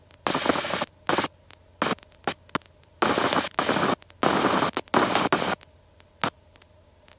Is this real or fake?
real